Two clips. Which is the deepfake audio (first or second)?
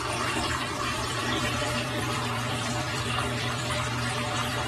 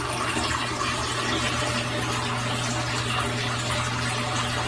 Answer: first